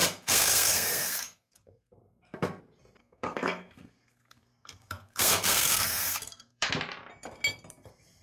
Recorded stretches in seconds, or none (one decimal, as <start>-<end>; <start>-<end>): 2.6-3.0; 6.7-8.2